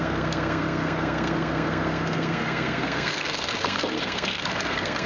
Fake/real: fake